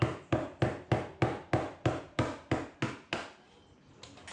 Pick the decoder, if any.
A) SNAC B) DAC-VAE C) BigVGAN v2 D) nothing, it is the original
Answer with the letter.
D